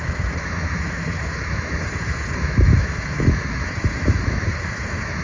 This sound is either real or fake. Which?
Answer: fake